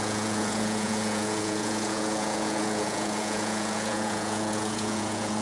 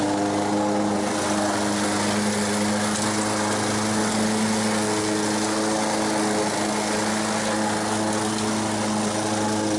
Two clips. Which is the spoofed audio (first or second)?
first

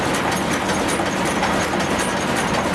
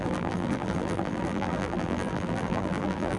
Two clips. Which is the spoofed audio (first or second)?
second